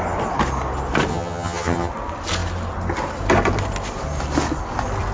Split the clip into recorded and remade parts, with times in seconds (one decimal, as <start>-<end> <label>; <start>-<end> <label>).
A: 0.0-1.1 recorded; 1.1-1.9 remade; 1.9-5.1 recorded